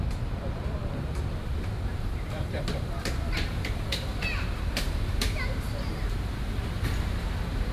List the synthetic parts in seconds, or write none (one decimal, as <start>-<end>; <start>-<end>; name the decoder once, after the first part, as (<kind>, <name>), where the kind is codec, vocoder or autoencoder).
0.0-0.8 (vocoder, BigVGAN v2); 1.4-7.7

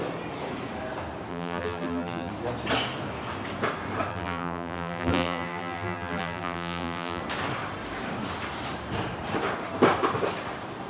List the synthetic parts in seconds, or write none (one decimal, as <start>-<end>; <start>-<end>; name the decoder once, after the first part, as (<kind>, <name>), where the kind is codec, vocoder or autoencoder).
1.3-2.3 (vocoder, BigVGAN v2); 4.1-7.2

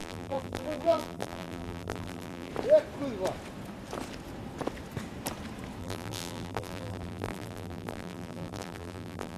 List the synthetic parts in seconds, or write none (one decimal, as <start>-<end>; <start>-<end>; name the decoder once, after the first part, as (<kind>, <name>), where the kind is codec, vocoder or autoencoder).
0.0-2.5 (vocoder, BigVGAN v2); 5.8-9.4

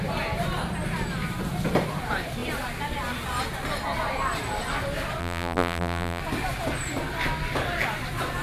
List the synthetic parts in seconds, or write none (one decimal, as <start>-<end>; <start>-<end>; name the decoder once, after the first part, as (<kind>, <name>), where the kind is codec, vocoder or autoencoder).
5.2-6.2 (vocoder, BigVGAN v2)

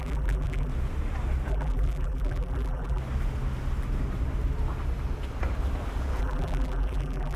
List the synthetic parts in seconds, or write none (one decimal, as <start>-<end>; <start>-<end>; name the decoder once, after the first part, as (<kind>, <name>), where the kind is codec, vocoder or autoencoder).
0.0-0.7 (vocoder, BigVGAN v2); 1.5-3.0; 6.2-7.4